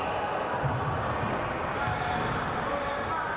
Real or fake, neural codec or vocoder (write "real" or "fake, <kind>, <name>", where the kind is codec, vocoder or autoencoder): real